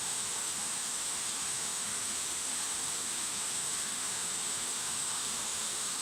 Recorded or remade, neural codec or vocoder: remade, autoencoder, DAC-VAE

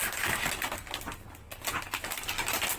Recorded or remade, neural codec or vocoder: recorded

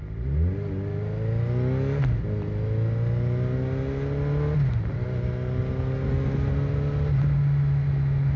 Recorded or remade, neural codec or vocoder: recorded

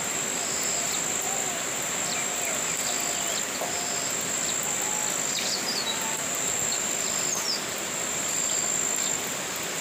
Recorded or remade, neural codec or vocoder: recorded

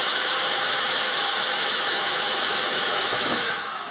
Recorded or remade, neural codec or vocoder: remade, autoencoder, DAC-VAE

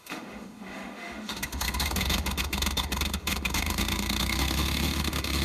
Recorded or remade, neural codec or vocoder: remade, autoencoder, DAC-VAE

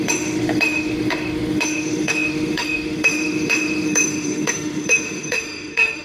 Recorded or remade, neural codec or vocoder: remade, autoencoder, DAC-VAE